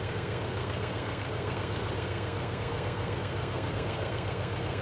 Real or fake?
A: fake